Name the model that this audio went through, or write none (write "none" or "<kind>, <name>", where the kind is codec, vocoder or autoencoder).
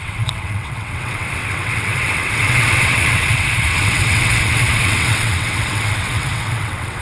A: vocoder, WaveNeXt